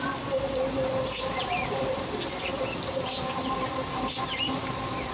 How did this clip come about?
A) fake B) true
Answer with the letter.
B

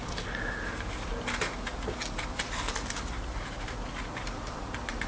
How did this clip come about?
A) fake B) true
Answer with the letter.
B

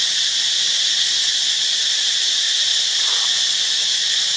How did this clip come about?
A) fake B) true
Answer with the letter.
B